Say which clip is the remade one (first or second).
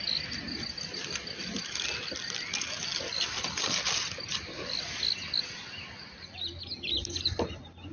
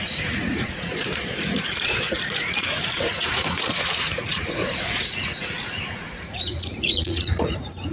second